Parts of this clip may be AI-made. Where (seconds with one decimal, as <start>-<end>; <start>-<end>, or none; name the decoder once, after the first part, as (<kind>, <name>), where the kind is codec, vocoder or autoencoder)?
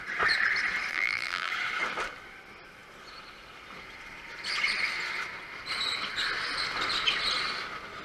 0.9-1.5 (vocoder, BigVGAN v2)